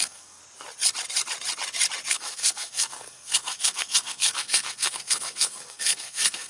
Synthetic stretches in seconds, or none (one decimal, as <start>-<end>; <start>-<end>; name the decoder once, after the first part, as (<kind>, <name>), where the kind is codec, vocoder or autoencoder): 0.0-0.4 (codec, SNAC); 2.1-6.5